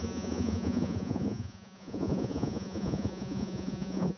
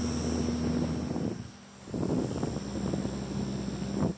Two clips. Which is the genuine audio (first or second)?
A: second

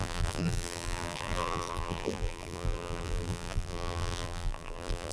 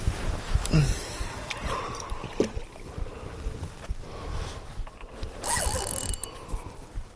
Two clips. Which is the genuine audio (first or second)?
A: second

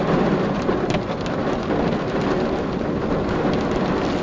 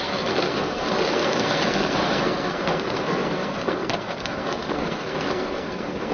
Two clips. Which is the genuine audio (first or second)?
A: first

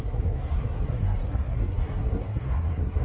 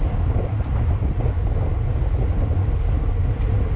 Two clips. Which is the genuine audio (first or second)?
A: second